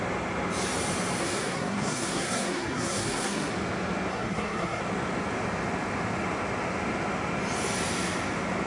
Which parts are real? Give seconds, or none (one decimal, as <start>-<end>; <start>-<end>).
0.0-1.2; 3.5-4.1; 4.8-8.7